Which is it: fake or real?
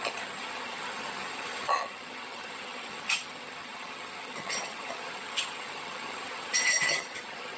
fake